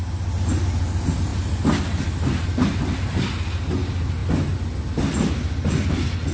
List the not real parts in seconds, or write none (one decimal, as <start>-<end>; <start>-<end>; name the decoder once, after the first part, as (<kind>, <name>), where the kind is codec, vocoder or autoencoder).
none